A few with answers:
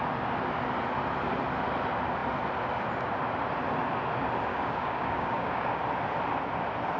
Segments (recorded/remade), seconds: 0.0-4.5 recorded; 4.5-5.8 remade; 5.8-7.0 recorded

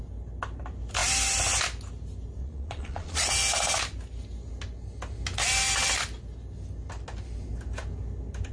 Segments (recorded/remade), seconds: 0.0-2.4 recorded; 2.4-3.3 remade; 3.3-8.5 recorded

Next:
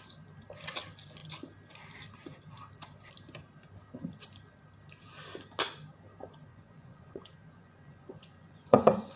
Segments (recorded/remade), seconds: 0.0-6.5 recorded; 6.5-9.2 remade